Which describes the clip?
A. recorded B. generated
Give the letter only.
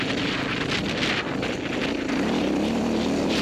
A